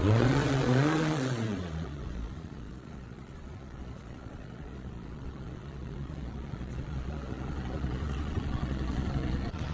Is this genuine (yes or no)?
no